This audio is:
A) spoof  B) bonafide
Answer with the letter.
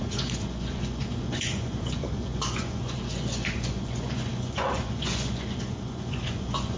A